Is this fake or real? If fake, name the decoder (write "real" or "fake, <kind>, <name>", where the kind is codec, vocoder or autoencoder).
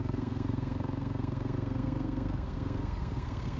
fake, codec, SNAC